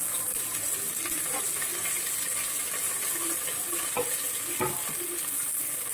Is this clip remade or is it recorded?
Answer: recorded